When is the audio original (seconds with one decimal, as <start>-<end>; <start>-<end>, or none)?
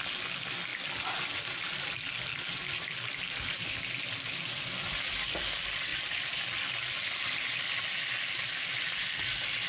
0.0-9.7